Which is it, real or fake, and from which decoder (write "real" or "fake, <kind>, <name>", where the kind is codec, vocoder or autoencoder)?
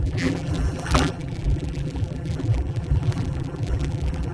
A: fake, vocoder, BigVGAN v2